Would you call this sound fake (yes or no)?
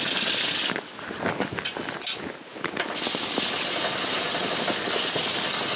no